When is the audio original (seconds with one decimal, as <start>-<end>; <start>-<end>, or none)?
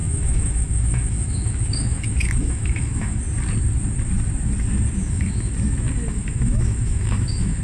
3.2-5.0; 5.5-6.1